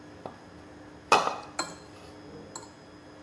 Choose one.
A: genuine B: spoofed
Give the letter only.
A